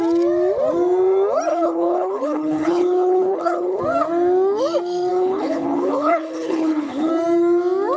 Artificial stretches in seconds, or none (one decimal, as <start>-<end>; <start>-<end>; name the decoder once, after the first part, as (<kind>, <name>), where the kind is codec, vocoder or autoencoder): 1.5-3.8 (codec, HILCodec); 5.1-7.1